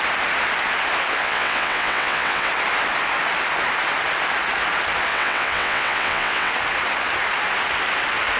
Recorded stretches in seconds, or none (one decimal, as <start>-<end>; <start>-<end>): 0.0-1.2; 2.5-5.1; 6.5-8.4